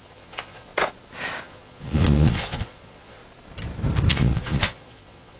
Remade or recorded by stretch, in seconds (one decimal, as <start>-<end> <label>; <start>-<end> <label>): 0.0-0.7 remade; 0.7-1.4 recorded; 1.4-3.2 remade; 3.2-4.1 recorded; 4.1-5.4 remade